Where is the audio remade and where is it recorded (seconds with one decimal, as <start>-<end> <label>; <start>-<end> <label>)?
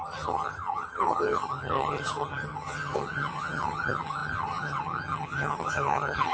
0.0-6.3 remade